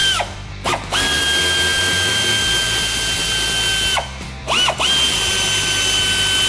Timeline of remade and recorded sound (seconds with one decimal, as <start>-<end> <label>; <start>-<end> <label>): 0.0-6.5 recorded